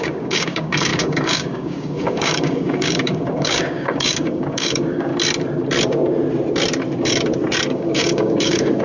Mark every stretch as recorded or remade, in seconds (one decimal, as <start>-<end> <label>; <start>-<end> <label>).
0.0-5.1 remade; 5.1-7.7 recorded; 7.7-8.8 remade